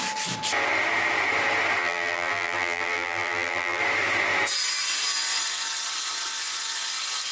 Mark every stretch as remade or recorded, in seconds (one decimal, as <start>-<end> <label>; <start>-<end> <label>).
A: 0.0-1.8 recorded; 1.8-3.8 remade; 3.8-7.3 recorded